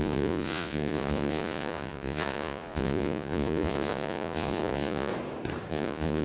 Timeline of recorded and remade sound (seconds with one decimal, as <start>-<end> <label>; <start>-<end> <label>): 0.0-5.1 remade; 5.1-5.7 recorded; 5.7-6.2 remade